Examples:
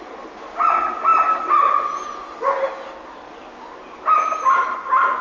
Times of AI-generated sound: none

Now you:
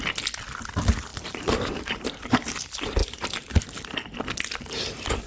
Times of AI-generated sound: 1.1-2.1; 3.0-3.6